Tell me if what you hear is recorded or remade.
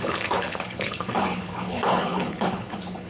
remade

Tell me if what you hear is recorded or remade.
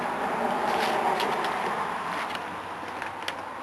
recorded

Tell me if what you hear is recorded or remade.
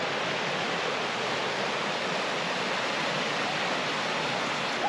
recorded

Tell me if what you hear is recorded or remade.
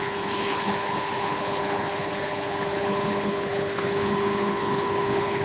remade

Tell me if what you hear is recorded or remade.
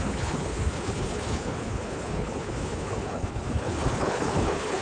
remade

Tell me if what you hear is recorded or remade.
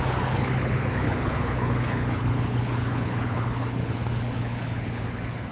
remade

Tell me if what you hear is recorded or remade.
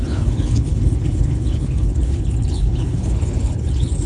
remade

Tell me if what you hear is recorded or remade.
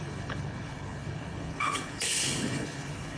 remade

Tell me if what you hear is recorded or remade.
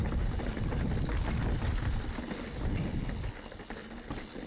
recorded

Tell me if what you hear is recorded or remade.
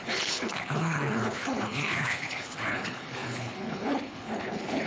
remade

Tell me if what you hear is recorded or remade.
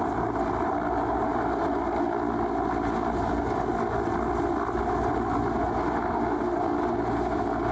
recorded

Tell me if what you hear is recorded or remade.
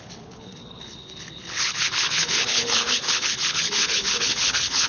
remade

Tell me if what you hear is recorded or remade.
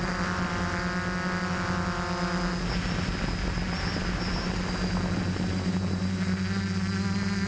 recorded